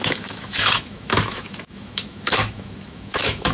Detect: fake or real fake